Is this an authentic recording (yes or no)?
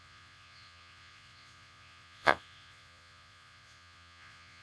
no